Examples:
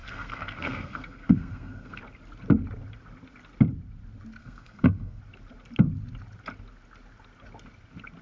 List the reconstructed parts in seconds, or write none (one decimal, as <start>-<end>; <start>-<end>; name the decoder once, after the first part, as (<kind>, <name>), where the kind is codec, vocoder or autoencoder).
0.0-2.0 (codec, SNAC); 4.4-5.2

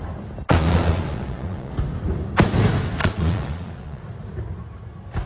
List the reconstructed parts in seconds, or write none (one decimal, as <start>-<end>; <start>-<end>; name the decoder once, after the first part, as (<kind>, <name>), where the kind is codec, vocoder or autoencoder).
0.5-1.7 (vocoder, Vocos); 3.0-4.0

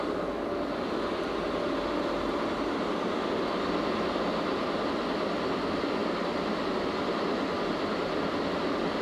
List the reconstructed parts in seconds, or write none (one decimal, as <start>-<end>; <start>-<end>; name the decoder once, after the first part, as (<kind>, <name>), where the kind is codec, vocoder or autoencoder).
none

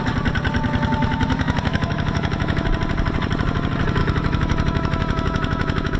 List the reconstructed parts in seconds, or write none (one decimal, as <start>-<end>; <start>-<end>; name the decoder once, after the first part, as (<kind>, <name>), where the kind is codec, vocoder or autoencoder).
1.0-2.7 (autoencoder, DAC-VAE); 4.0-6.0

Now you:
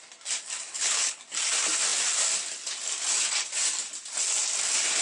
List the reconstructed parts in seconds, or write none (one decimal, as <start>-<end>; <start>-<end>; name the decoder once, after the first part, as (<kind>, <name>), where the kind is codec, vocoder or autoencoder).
0.7-1.2 (codec, HILCodec)

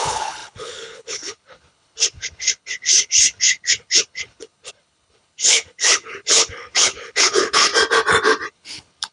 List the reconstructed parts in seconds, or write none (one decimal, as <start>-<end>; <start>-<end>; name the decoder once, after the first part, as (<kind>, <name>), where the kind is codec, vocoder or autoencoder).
0.0-7.7 (codec, HILCodec); 8.5-9.1